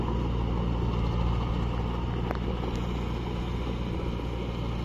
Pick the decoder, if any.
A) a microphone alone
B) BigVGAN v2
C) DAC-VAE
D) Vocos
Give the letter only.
A